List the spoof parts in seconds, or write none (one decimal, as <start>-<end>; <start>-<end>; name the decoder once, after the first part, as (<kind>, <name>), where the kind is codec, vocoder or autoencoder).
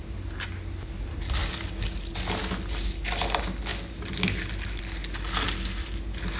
none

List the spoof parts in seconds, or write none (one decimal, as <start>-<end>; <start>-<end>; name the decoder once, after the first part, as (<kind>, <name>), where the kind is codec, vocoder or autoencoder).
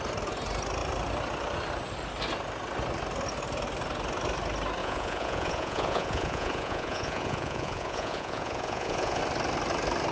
4.8-9.2 (vocoder, Vocos)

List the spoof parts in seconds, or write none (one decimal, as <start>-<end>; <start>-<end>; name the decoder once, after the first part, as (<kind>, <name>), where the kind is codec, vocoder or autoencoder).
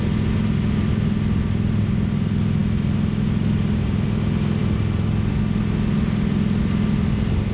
none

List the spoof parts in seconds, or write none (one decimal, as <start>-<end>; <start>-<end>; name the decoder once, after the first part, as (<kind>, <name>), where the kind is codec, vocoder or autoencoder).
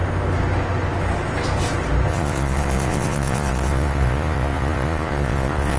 2.1-5.8 (vocoder, Vocos)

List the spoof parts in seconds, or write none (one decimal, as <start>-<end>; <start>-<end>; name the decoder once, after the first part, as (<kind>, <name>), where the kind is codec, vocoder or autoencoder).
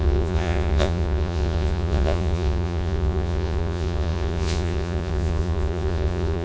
0.0-6.4 (vocoder, Vocos)